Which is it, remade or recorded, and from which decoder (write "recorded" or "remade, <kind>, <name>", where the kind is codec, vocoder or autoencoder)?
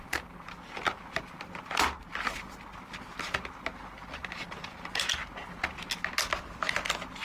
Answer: recorded